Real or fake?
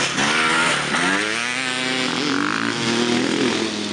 real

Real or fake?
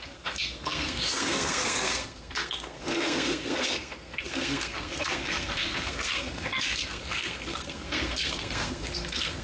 fake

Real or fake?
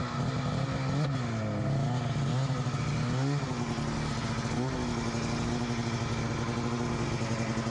real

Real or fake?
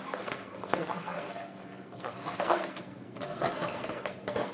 fake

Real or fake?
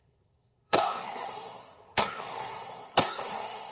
fake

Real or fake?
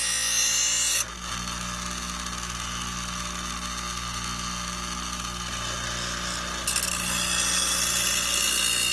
real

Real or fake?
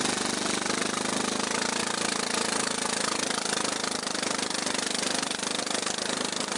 real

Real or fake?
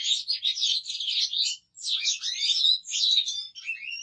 real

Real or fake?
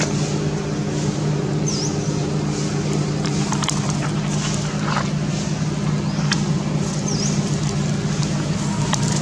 real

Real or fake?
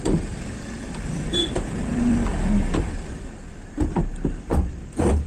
real